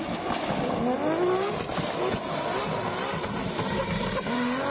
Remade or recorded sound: recorded